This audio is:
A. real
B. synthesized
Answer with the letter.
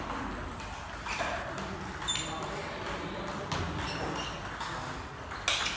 A